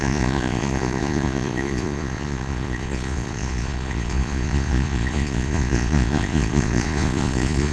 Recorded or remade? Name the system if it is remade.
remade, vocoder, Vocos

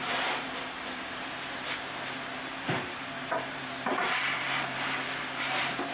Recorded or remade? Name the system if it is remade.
remade, vocoder, BigVGAN v2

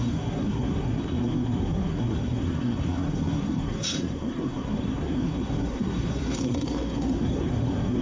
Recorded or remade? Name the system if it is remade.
remade, codec, SNAC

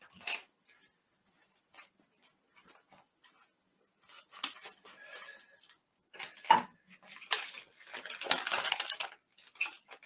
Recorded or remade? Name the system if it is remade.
recorded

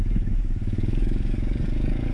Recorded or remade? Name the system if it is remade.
remade, codec, DAC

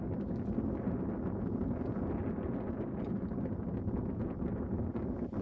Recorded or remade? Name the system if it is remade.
recorded